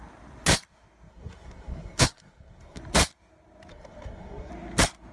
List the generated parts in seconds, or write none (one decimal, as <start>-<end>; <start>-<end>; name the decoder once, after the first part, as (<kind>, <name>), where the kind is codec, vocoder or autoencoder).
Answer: 1.1-2.8 (codec, SNAC); 3.7-4.5